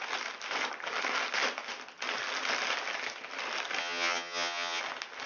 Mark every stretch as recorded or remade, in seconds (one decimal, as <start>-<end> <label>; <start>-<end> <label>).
0.0-3.8 recorded; 3.8-4.8 remade; 4.8-5.3 recorded